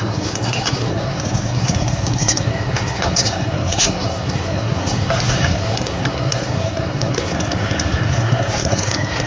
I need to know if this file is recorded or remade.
remade